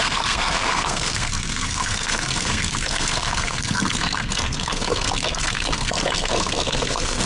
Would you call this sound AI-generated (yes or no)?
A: yes